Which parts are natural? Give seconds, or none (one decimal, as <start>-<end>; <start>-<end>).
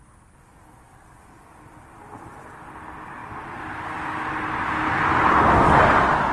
0.0-6.3